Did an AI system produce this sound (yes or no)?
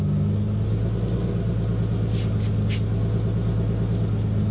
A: no